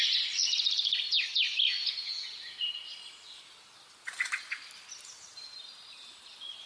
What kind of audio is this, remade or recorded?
recorded